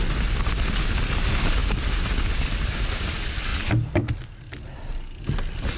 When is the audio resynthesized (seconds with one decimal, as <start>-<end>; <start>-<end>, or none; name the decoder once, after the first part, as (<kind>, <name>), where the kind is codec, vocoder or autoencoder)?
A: none